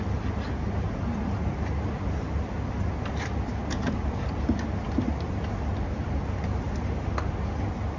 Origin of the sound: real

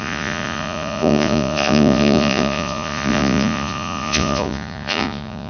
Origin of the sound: fake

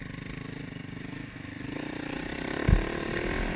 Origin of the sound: real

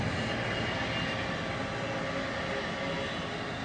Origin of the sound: real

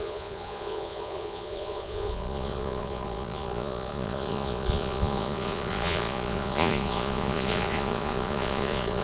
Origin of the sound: fake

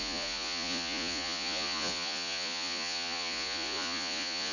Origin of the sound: fake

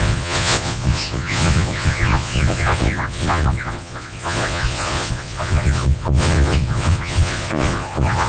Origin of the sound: fake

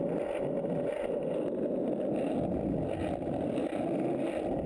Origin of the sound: real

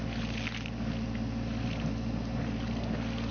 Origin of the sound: real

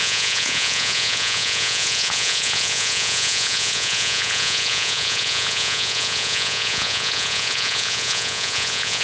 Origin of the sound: fake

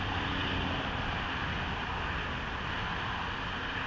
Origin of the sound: real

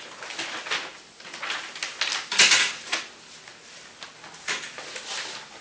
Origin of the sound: real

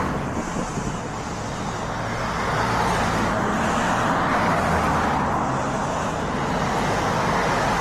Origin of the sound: real